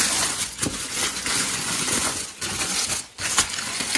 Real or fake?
fake